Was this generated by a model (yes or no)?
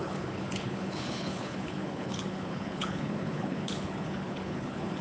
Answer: yes